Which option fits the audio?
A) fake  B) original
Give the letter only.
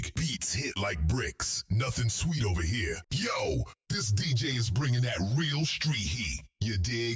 B